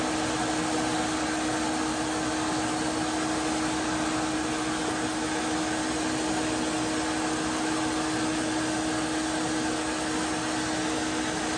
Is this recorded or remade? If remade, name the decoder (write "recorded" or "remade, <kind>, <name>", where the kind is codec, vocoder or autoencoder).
recorded